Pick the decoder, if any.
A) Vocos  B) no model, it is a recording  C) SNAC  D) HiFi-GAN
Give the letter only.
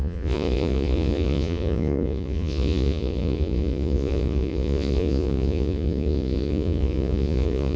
A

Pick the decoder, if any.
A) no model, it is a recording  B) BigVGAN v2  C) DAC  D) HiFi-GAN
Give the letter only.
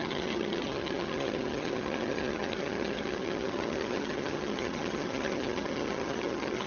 D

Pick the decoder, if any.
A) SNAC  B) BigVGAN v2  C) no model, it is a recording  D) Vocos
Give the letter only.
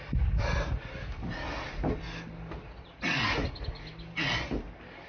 C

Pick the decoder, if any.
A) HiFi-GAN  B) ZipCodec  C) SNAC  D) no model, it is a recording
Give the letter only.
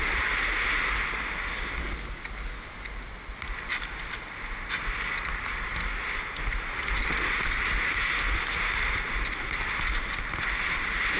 D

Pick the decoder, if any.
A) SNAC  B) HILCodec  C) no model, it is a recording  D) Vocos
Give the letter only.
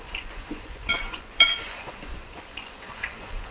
D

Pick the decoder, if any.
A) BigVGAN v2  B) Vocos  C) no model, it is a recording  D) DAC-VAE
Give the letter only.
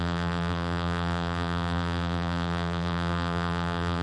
A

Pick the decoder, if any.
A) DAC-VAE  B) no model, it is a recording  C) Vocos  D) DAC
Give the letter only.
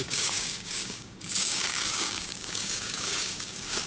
D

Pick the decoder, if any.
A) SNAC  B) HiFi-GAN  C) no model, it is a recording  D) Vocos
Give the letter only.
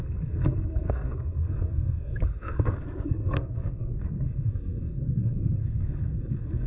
A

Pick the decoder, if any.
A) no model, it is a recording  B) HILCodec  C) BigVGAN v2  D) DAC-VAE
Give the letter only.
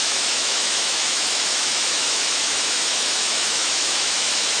D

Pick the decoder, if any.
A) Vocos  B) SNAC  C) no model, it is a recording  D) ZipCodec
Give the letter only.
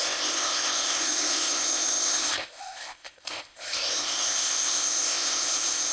D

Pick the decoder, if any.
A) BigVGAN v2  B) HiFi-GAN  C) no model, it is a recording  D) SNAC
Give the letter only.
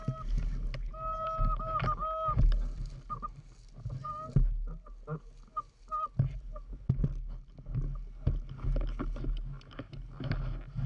C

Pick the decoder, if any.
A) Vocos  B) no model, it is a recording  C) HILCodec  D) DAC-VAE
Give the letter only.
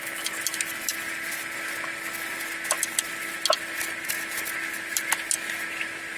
B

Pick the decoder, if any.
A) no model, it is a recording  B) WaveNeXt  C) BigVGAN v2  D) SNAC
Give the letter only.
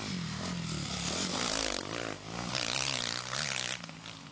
A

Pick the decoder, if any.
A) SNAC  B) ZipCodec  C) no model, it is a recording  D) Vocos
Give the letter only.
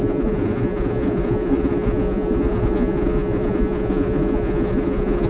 D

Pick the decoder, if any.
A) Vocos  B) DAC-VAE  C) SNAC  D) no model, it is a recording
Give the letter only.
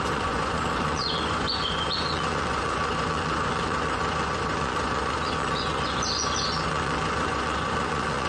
A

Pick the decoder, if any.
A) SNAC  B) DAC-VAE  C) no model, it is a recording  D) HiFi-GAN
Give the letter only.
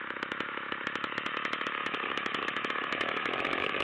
B